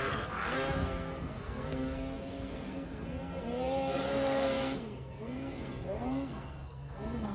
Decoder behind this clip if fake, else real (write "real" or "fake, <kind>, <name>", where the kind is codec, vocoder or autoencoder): fake, codec, SNAC